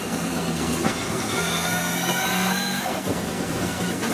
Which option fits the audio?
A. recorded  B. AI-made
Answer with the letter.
B